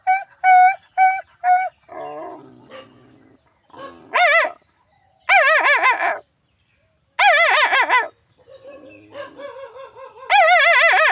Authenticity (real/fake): real